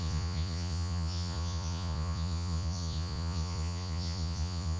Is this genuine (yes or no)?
no